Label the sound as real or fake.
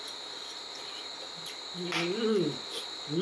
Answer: real